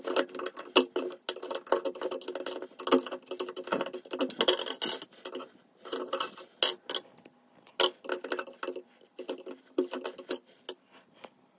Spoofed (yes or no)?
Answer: no